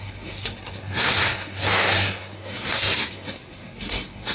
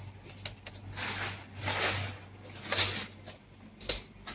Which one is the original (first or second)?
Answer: second